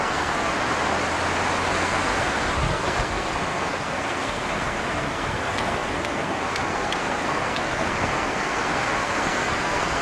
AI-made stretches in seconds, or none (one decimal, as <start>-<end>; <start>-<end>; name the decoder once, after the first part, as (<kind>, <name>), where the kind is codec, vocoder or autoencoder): 0.0-0.5 (codec, SNAC); 1.7-10.0